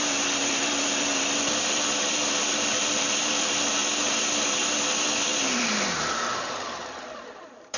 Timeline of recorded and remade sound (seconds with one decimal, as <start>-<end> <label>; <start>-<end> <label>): 0.0-3.8 remade; 3.8-5.2 recorded; 5.2-7.8 remade